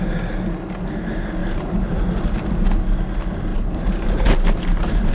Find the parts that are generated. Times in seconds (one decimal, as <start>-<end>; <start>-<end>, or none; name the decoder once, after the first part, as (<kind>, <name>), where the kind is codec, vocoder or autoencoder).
1.4-2.0 (vocoder, BigVGAN v2); 3.5-5.1